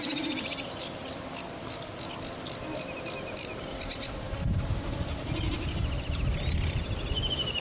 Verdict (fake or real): real